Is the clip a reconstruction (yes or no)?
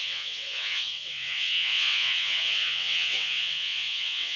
yes